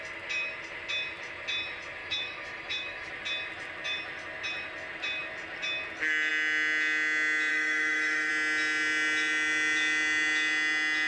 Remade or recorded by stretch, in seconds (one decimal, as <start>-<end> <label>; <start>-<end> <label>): 0.0-2.0 recorded; 2.0-3.1 remade; 3.1-7.5 recorded; 7.5-8.3 remade; 8.3-11.1 recorded